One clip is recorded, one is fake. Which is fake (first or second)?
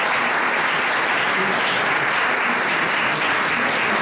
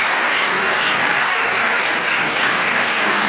second